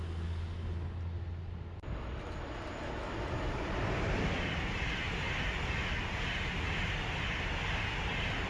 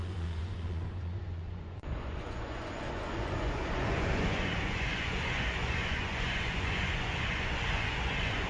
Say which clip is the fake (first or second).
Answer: second